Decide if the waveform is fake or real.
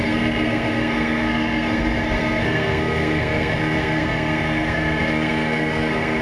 fake